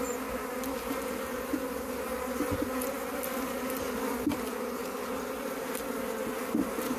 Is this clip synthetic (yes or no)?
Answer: no